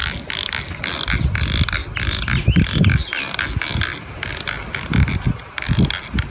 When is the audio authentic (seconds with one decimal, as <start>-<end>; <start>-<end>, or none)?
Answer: 0.0-6.3